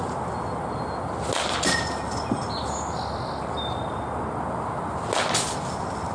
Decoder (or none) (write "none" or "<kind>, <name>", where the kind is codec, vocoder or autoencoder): none